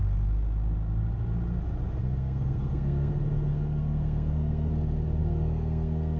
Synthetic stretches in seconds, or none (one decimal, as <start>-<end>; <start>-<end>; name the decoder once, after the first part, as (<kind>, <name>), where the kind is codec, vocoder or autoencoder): 2.0-3.1 (codec, SNAC); 3.5-4.7; 5.2-6.2